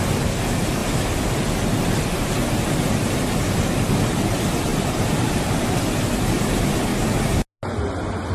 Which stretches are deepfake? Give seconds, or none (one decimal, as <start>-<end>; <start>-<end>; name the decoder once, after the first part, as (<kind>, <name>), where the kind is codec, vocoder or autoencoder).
4.7-5.8 (vocoder, BigVGAN v2)